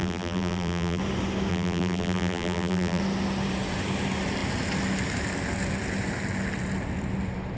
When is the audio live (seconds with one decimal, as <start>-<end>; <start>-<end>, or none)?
1.0-1.5; 3.0-7.6